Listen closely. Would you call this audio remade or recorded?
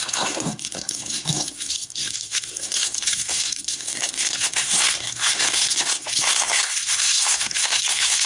remade